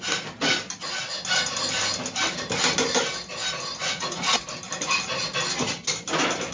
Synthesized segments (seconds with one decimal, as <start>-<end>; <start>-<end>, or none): 3.8-4.4